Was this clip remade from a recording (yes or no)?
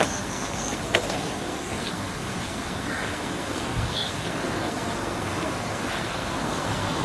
yes